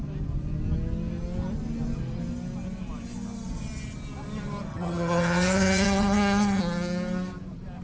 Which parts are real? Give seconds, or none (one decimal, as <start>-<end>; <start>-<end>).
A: 0.0-4.7; 6.6-7.8